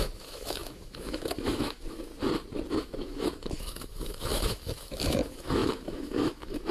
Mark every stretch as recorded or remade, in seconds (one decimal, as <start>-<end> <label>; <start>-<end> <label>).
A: 0.0-2.1 remade; 2.1-2.7 recorded; 2.7-6.7 remade